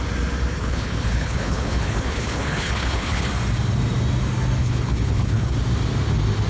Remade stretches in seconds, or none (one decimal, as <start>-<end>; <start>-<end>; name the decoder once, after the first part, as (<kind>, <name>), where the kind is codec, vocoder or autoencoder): 0.6-3.3 (codec, HILCodec); 4.6-5.5